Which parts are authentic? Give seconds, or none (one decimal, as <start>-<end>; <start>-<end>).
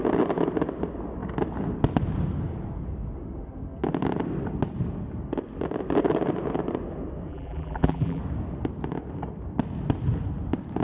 0.0-7.3; 8.2-10.8